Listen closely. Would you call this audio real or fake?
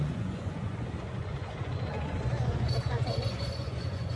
fake